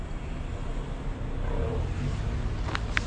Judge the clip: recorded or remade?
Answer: recorded